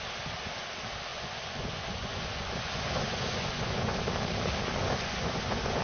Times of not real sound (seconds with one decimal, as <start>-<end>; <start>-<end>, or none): 1.1-4.0; 4.8-5.8